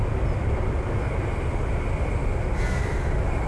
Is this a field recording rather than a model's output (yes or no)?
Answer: yes